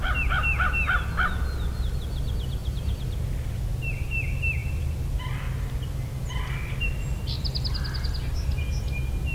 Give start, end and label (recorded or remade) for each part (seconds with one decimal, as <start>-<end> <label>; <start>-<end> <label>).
0.0-9.3 recorded